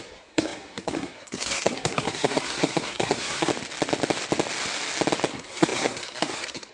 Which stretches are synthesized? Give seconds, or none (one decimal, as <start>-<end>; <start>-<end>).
0.0-3.5; 5.3-6.7